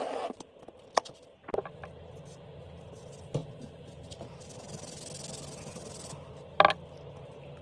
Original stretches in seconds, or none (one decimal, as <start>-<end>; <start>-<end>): 0.0-7.6